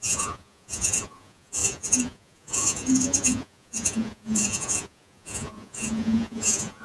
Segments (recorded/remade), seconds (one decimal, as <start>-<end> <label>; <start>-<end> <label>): 0.0-6.8 remade

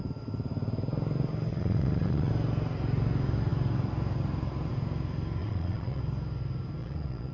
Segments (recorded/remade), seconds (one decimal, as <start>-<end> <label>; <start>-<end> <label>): 0.0-1.5 recorded; 1.5-2.3 remade; 2.3-5.4 recorded; 5.4-6.0 remade; 6.0-6.8 recorded; 6.8-7.3 remade

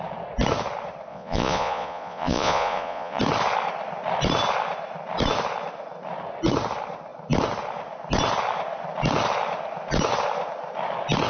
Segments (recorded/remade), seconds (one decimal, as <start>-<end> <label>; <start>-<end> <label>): 0.0-1.1 recorded; 1.1-3.2 remade; 3.2-11.3 recorded

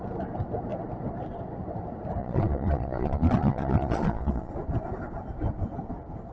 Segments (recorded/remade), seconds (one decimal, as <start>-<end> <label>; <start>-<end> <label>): 0.0-2.2 recorded; 2.2-4.5 remade; 4.5-6.3 recorded

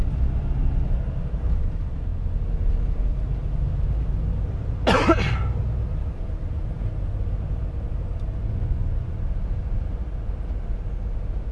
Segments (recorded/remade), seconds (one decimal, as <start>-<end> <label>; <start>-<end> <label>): 0.0-8.4 recorded; 8.4-9.2 remade; 9.2-11.5 recorded

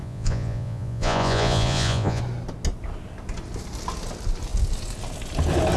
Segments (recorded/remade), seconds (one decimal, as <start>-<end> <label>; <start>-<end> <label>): 0.0-2.2 remade; 2.2-5.8 recorded

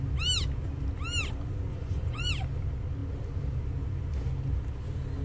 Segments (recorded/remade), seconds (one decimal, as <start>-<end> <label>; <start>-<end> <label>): 0.0-1.7 recorded; 1.7-2.3 remade; 2.3-5.2 recorded